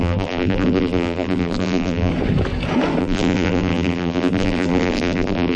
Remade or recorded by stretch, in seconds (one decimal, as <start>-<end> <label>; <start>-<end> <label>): 0.0-2.1 remade; 2.1-3.0 recorded; 3.0-5.6 remade